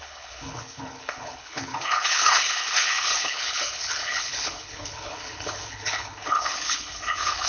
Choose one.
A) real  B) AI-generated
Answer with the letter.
B